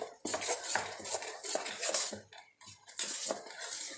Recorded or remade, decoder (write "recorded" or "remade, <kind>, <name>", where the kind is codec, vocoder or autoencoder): recorded